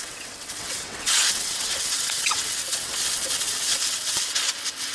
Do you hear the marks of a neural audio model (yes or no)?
yes